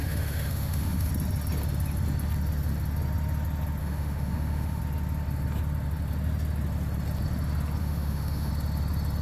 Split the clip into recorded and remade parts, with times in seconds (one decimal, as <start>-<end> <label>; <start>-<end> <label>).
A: 0.0-1.1 remade; 1.1-3.8 recorded; 3.8-4.8 remade; 4.8-7.8 recorded; 7.8-8.5 remade; 8.5-9.2 recorded